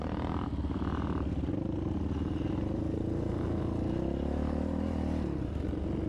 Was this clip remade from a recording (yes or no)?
no